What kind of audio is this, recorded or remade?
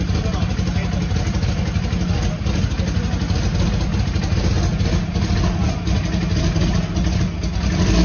recorded